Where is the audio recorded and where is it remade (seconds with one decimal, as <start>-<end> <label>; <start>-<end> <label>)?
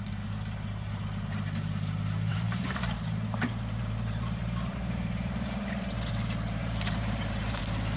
0.0-2.3 recorded; 2.3-6.1 remade; 6.1-6.6 recorded; 6.6-7.6 remade; 7.6-8.0 recorded